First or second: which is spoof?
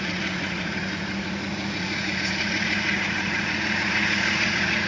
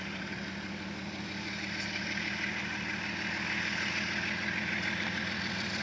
first